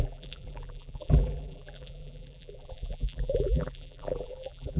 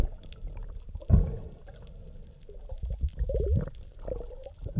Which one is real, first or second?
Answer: second